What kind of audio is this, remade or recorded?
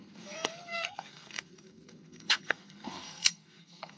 remade